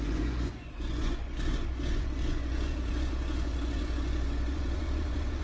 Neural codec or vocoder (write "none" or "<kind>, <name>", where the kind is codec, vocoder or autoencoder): vocoder, Vocos